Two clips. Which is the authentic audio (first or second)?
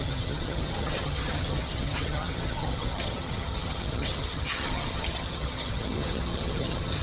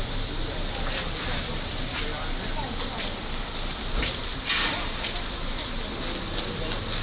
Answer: second